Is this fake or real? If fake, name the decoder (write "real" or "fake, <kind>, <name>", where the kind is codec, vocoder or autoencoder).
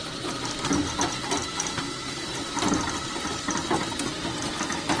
real